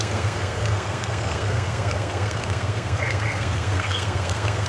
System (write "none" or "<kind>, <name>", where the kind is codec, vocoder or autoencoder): codec, SNAC